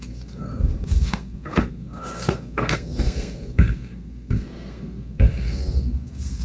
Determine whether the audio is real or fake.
fake